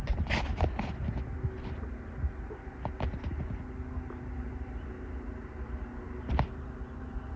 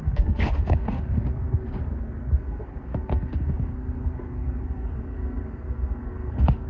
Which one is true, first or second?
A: first